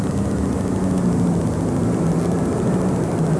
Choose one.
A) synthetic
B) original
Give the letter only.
B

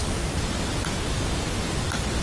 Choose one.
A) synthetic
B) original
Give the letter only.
B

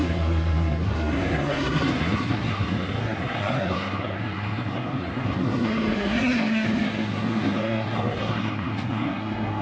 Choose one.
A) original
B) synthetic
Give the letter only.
B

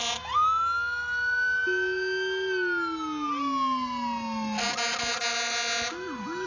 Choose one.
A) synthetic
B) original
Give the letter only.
B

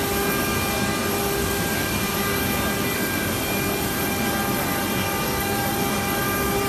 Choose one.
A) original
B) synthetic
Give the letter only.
A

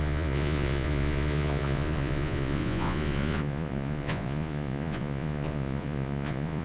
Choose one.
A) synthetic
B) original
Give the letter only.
A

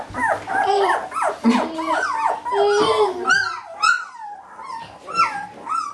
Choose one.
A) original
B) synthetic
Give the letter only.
A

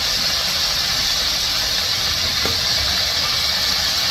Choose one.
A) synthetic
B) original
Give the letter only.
B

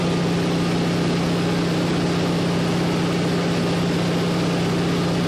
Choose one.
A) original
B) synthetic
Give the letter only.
A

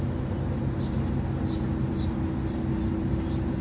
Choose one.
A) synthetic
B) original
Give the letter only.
B